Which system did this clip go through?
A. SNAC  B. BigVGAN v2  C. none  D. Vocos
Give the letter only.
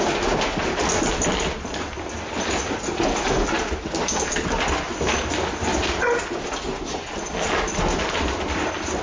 C